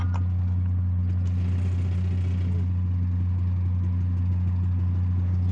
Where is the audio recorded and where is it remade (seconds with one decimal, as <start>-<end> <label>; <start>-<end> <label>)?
0.0-5.5 recorded

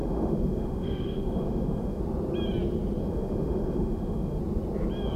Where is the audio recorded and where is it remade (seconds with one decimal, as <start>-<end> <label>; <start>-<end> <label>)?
0.0-2.0 remade; 2.0-3.0 recorded; 3.0-4.4 remade; 4.4-5.2 recorded

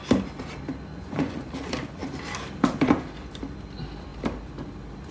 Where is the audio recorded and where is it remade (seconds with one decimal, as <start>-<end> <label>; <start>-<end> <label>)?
0.0-0.9 recorded; 0.9-1.5 remade; 1.5-5.1 recorded

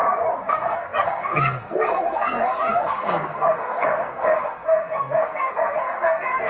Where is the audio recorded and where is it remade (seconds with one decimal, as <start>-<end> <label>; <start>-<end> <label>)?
0.0-0.5 recorded; 0.5-6.5 remade

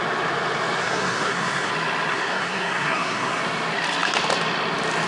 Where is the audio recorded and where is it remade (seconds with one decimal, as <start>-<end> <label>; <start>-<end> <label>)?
0.0-0.8 recorded; 0.8-1.7 remade; 1.7-2.1 recorded; 2.1-3.4 remade; 3.4-5.1 recorded

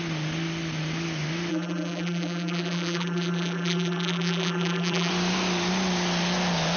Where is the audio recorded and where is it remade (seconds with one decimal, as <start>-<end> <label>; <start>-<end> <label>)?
0.0-1.5 recorded; 1.5-5.1 remade; 5.1-6.8 recorded

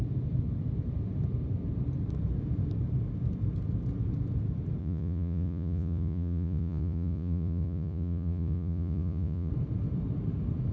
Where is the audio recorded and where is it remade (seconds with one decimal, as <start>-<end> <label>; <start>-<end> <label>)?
0.0-4.8 recorded; 4.8-9.5 remade; 9.5-10.7 recorded

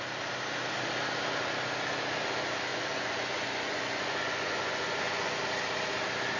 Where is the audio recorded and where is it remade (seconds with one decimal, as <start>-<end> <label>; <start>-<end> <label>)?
0.0-2.7 recorded; 2.7-5.4 remade; 5.4-6.4 recorded